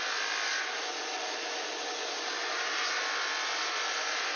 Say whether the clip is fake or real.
real